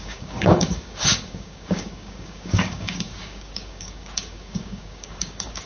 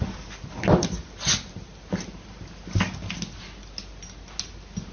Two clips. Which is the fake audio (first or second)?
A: first